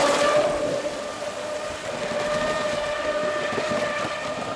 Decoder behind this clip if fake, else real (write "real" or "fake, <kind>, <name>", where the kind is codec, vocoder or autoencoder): real